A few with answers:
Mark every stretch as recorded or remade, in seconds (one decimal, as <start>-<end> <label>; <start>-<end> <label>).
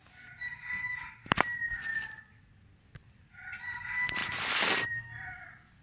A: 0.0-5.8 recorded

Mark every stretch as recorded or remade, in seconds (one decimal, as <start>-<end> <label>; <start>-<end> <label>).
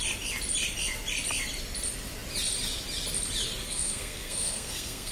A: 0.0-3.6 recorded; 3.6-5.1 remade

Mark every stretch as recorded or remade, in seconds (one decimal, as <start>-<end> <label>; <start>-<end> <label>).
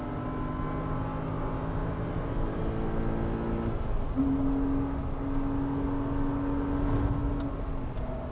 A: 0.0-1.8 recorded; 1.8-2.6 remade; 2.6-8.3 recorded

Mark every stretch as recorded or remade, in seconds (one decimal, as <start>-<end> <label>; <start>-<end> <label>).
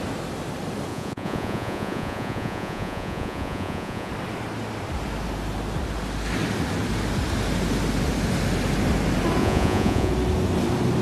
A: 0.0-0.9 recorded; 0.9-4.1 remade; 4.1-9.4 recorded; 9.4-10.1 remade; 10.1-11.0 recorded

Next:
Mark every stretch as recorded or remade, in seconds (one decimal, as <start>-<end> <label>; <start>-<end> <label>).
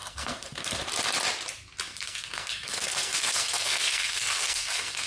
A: 0.0-0.8 remade; 0.8-1.9 recorded; 1.9-5.1 remade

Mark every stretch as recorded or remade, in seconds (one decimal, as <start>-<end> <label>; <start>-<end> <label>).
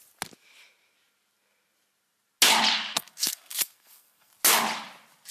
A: 0.0-2.9 recorded; 2.9-4.3 remade; 4.3-5.3 recorded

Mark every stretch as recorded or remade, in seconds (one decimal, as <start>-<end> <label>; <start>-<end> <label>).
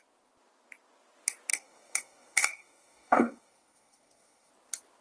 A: 0.0-1.5 recorded; 1.5-4.5 remade; 4.5-5.0 recorded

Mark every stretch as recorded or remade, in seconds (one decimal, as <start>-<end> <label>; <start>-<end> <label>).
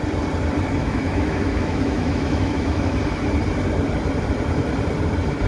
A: 0.0-0.8 recorded; 0.8-2.9 remade; 2.9-5.5 recorded